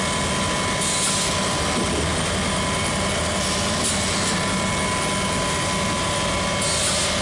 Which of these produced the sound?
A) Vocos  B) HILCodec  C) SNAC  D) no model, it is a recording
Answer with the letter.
D